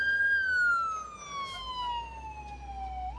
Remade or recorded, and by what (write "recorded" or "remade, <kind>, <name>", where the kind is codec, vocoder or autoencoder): recorded